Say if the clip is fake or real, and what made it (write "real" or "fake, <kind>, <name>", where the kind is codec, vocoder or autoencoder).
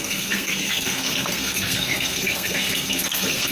fake, codec, SNAC